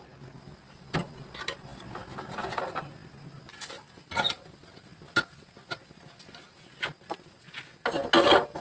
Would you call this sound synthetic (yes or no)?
no